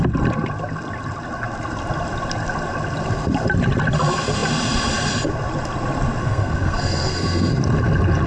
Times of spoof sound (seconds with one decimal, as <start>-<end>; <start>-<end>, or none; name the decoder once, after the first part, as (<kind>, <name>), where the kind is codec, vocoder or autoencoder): 6.2-7.5 (codec, SNAC)